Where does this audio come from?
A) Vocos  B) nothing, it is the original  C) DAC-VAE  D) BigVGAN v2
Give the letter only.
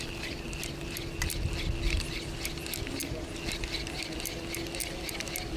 B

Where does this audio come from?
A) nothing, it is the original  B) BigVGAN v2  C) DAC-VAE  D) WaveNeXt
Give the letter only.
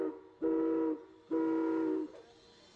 A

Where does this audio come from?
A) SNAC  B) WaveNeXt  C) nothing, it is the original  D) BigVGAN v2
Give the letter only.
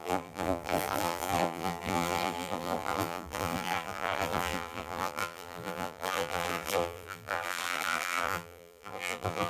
D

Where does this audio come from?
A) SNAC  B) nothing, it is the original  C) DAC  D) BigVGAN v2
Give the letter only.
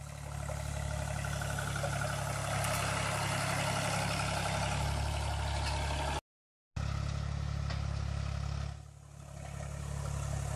B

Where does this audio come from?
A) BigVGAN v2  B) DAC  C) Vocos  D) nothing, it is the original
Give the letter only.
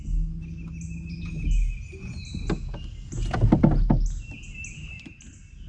D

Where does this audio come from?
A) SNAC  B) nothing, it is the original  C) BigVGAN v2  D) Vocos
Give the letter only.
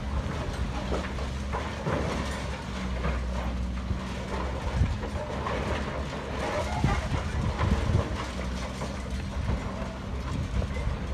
B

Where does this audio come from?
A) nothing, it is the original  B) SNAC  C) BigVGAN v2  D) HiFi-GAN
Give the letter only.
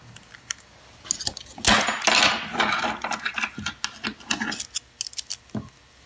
A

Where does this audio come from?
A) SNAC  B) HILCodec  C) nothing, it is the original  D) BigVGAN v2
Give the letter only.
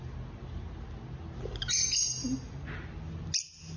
C